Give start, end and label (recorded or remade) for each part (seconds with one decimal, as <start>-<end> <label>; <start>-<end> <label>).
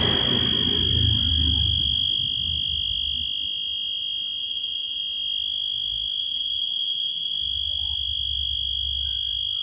0.0-4.4 recorded; 4.4-5.0 remade; 5.0-6.2 recorded; 6.2-7.3 remade; 7.3-9.6 recorded